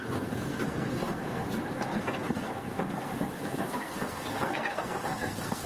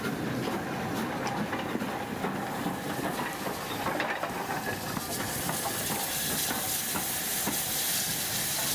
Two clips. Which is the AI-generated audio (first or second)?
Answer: first